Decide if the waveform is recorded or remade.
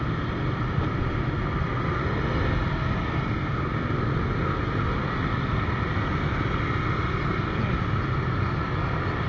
recorded